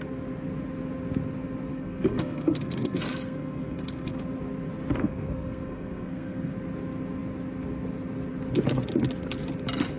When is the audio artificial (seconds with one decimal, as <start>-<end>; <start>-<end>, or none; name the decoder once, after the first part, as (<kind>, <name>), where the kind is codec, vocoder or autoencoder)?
1.7-4.2 (codec, SNAC); 5.0-6.5